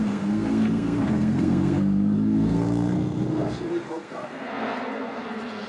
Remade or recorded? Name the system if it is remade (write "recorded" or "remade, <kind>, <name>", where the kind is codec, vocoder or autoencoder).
remade, codec, SNAC